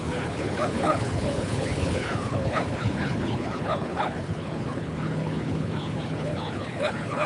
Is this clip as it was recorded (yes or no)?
no